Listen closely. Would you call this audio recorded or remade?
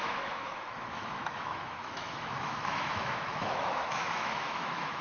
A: remade